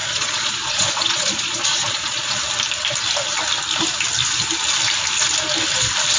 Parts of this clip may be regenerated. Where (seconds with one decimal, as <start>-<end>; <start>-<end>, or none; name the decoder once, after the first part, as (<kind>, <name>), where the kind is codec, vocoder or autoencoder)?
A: 0.0-2.4 (vocoder, Vocos)